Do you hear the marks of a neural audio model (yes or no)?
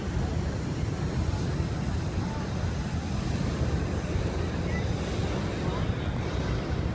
no